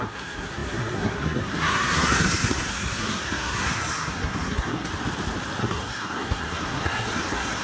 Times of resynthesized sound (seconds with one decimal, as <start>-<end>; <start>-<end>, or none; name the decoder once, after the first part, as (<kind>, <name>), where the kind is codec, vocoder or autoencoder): 0.0-4.9 (codec, SNAC); 5.6-7.6